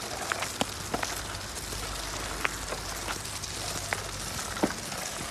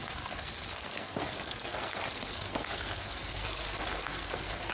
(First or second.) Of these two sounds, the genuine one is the first